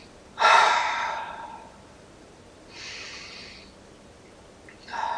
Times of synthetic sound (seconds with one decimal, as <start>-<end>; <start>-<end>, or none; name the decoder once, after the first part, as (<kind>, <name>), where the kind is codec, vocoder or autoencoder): 0.0-3.1 (vocoder, BigVGAN v2)